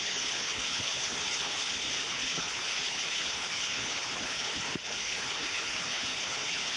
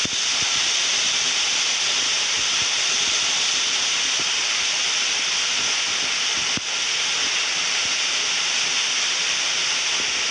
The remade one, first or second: first